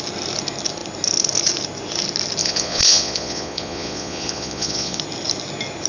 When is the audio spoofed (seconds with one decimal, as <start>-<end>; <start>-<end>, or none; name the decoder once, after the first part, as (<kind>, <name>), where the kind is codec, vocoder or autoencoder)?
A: 2.4-5.0 (vocoder, Vocos)